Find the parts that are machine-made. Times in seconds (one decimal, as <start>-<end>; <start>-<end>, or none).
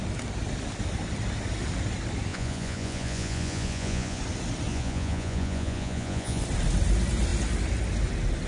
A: 2.3-4.2; 4.7-6.4